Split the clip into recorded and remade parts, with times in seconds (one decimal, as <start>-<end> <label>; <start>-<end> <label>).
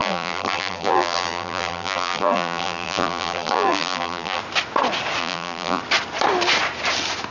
0.0-4.4 remade; 4.4-5.2 recorded; 5.2-5.8 remade; 5.8-7.3 recorded